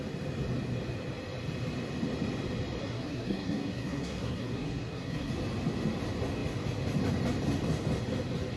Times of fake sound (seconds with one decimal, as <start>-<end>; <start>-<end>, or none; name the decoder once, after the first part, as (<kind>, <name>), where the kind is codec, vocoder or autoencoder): 2.8-5.3 (codec, SNAC)